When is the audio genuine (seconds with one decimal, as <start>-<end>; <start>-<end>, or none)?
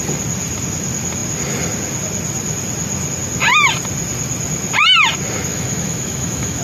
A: 0.0-5.5